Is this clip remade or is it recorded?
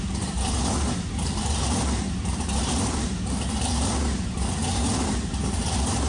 remade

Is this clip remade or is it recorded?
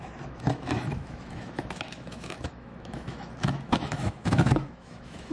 remade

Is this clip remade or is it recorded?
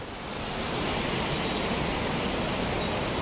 recorded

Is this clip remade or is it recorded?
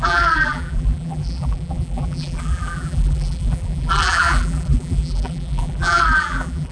remade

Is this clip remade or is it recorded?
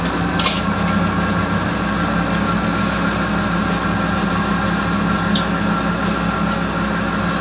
recorded